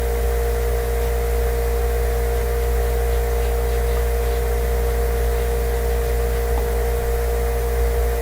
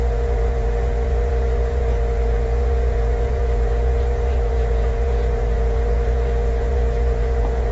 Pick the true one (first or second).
first